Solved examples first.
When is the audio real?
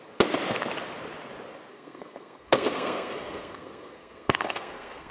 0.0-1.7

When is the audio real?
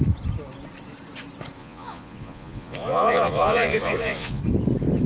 0.0-1.6; 4.4-5.1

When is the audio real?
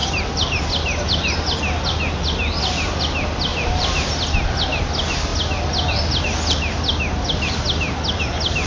0.6-3.5; 4.1-8.7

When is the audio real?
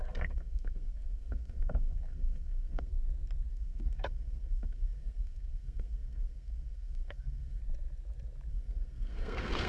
2.9-3.5; 7.6-8.5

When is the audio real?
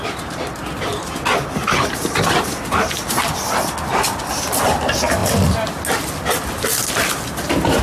0.0-7.8